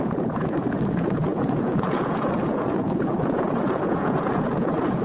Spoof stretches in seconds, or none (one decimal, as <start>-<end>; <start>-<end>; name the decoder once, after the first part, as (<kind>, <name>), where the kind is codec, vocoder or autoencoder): 0.0-5.0 (vocoder, Vocos)